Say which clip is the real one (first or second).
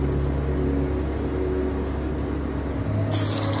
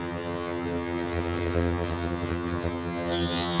first